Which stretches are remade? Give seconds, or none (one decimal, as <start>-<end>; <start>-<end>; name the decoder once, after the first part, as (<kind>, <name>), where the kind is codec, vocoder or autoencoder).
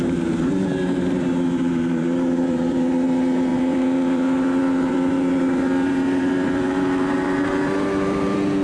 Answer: 0.0-8.6 (vocoder, BigVGAN v2)